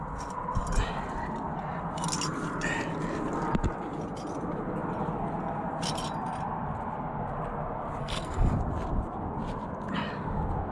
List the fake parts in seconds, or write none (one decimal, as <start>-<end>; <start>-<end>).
8.0-8.5